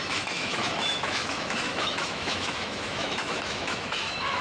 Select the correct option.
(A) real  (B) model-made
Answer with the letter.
B